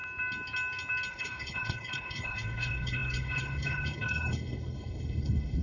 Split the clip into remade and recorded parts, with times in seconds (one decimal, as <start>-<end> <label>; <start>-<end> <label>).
0.0-1.1 recorded; 1.1-5.6 remade

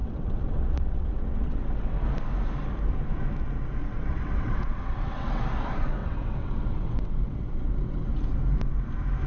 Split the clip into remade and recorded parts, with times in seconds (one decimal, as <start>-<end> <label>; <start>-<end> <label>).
0.0-2.0 remade; 2.0-3.8 recorded; 3.8-5.4 remade; 5.4-6.0 recorded; 6.0-8.2 remade; 8.2-9.3 recorded